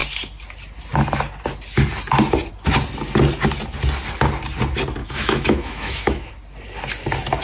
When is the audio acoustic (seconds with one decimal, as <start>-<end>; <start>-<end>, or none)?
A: 0.0-5.0; 6.3-7.4